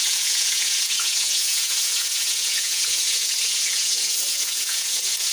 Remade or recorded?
remade